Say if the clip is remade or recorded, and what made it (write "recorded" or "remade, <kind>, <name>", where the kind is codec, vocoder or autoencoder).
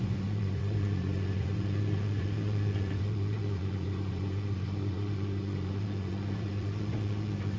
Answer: remade, vocoder, Vocos